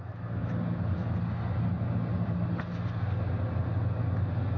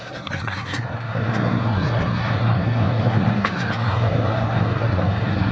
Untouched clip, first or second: first